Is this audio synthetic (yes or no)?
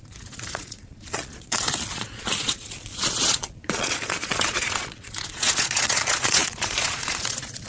yes